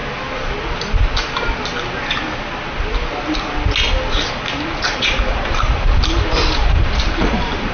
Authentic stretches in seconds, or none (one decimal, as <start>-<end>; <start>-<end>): 0.0-4.3